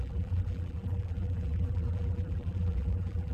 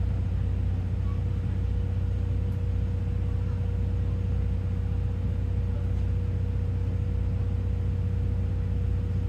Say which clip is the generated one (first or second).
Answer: first